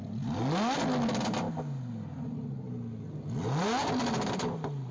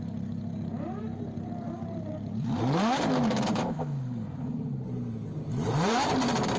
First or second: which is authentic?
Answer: first